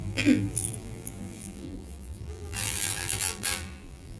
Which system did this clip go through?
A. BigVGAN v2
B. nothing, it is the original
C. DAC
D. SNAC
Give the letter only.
A